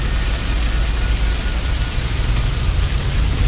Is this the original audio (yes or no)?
yes